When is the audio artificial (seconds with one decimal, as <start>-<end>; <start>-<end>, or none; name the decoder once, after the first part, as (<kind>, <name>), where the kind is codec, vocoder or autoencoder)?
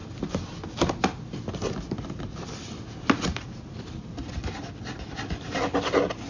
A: none